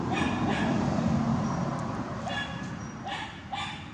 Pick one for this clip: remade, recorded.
recorded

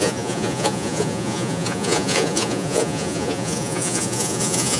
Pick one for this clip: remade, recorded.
remade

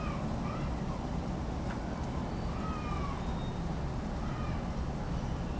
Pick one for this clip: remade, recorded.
recorded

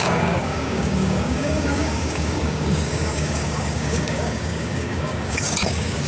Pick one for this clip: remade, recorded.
remade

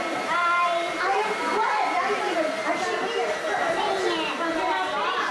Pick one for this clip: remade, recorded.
remade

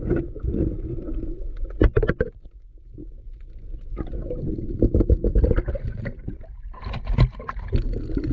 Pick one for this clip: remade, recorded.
recorded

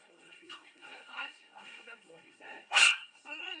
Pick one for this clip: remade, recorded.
remade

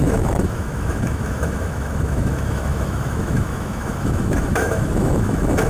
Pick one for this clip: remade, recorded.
remade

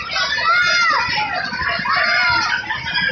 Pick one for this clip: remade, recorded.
recorded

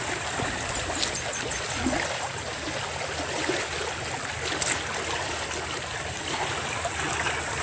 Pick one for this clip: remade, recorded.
recorded